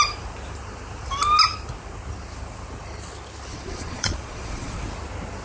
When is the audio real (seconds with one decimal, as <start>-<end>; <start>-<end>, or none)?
0.0-3.5; 4.8-5.4